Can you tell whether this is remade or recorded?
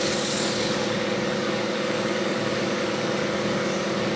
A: remade